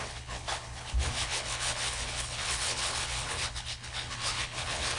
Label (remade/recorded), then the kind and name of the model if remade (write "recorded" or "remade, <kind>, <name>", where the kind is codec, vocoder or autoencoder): remade, codec, HILCodec